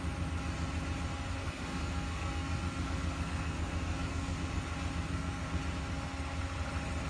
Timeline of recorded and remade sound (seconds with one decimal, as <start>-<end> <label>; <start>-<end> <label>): 0.0-1.4 recorded; 1.4-4.4 remade; 4.4-5.1 recorded; 5.1-5.6 remade; 5.6-7.1 recorded